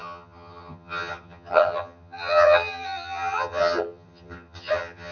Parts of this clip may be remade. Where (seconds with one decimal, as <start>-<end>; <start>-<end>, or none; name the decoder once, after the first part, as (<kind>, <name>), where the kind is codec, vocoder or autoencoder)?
0.0-5.1 (vocoder, HiFi-GAN)